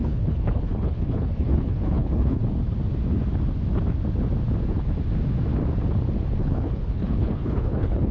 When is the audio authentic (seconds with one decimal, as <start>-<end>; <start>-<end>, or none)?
2.4-6.4

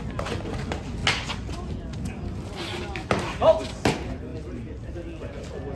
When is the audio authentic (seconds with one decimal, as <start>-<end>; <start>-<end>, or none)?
0.0-5.8

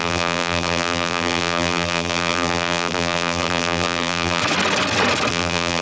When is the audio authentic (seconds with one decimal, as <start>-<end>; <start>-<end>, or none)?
4.4-5.3

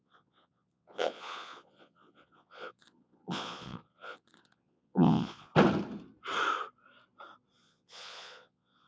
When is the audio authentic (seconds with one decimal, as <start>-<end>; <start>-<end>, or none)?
5.5-7.6

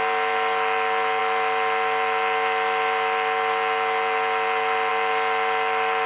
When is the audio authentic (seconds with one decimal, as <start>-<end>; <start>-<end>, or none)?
0.0-6.1

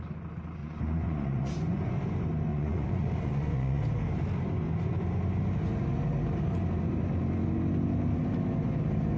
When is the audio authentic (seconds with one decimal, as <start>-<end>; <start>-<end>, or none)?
0.0-0.6; 1.9-2.5; 3.8-9.2

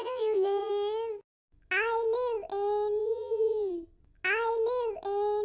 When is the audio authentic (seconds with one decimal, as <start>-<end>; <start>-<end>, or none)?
0.7-3.0; 3.7-5.4

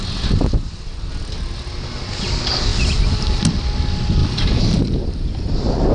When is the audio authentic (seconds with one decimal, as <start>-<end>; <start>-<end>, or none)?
0.0-2.7; 3.4-4.2; 5.5-5.9